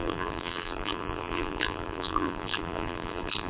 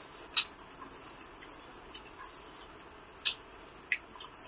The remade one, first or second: first